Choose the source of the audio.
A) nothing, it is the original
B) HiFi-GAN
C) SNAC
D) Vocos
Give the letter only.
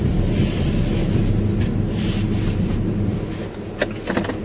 A